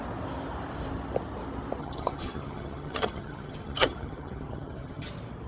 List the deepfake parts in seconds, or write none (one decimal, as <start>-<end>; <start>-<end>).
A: 1.8-5.1